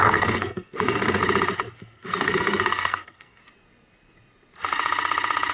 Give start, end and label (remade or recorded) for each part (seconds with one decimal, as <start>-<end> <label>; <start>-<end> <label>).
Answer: 0.0-1.2 remade; 1.2-1.8 recorded; 1.8-3.4 remade; 3.4-5.5 recorded